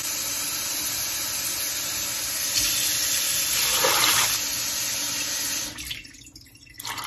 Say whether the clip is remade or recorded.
recorded